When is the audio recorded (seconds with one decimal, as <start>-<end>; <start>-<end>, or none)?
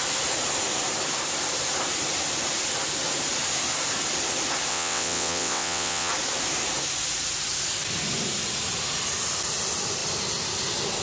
0.0-4.7; 6.1-11.0